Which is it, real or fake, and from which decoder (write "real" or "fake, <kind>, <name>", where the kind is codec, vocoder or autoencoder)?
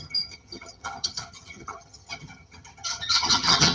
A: fake, vocoder, HiFi-GAN